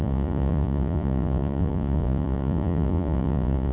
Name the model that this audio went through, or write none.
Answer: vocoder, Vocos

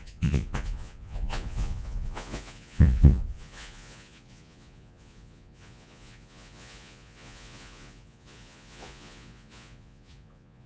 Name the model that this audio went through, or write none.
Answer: vocoder, Vocos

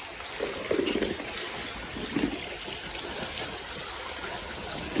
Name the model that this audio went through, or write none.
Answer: none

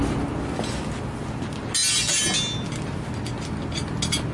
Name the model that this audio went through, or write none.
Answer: none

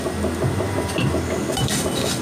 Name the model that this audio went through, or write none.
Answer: none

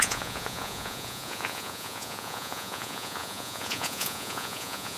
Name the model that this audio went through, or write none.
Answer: vocoder, Vocos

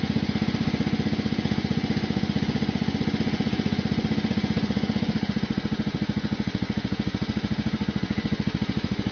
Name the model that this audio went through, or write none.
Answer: vocoder, Vocos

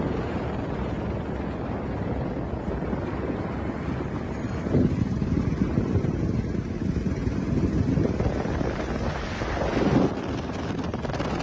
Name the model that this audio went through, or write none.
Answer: none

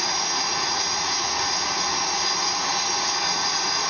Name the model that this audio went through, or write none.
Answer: vocoder, Vocos